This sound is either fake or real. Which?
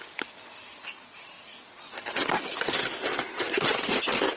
real